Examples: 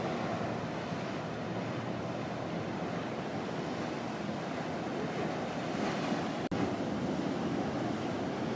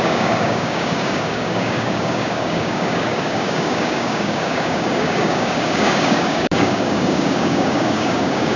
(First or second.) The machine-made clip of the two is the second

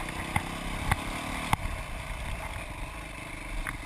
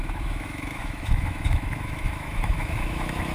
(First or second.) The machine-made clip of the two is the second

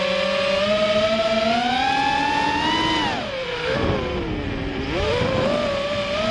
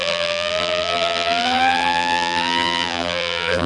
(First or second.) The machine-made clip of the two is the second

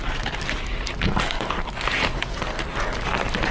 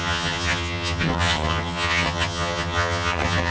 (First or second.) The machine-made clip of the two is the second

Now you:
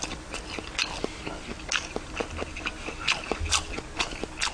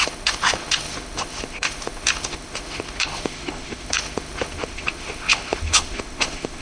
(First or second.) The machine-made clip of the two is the second